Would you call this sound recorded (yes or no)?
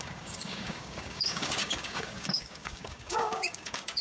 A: no